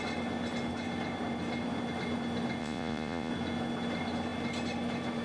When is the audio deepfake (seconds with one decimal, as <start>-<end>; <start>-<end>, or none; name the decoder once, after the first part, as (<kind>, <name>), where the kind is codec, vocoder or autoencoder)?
2.6-3.3 (vocoder, Vocos)